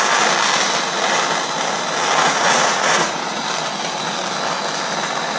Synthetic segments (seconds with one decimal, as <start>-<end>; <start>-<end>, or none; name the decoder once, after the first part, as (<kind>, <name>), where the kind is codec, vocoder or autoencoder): 2.2-3.4 (vocoder, Vocos)